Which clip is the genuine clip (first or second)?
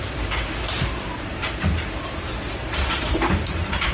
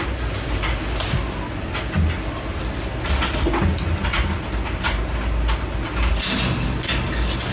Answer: second